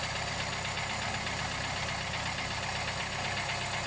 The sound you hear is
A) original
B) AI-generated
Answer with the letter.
A